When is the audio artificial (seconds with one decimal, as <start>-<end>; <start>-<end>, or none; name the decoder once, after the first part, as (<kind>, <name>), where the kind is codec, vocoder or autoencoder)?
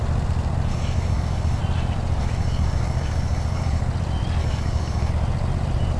0.7-1.6 (codec, DAC); 2.2-3.8; 4.4-5.1